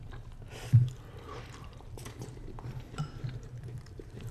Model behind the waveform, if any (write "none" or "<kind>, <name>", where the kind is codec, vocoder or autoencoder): vocoder, BigVGAN v2